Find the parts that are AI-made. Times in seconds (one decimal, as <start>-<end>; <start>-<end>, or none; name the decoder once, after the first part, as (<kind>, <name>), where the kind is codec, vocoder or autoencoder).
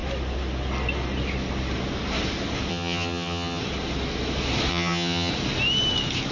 2.7-3.6 (vocoder, HiFi-GAN); 4.7-5.3